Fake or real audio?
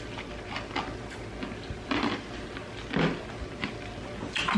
real